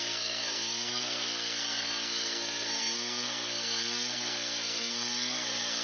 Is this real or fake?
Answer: fake